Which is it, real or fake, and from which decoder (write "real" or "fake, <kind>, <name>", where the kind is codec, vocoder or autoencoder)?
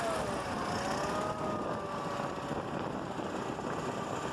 real